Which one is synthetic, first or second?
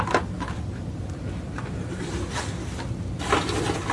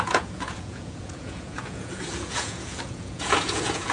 second